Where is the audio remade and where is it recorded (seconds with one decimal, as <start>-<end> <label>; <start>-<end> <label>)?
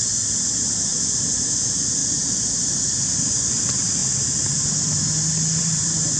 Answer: 0.0-2.0 remade; 2.0-3.0 recorded; 3.0-4.0 remade; 4.0-5.6 recorded; 5.6-6.2 remade